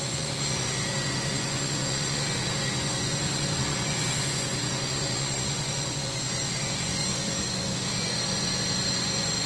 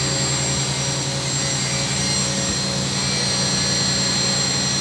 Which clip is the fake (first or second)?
first